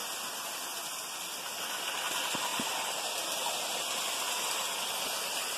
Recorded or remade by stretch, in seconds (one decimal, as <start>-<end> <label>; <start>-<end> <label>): 0.0-5.6 recorded